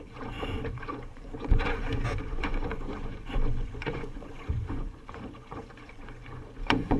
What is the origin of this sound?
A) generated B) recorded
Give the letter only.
A